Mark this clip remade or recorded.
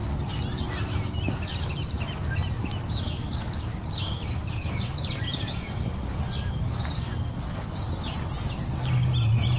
recorded